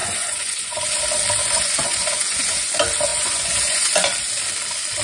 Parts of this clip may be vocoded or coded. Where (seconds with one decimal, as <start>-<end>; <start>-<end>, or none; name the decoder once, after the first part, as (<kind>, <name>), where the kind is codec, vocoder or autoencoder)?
0.0-1.0 (vocoder, Vocos); 1.4-2.7; 3.1-3.9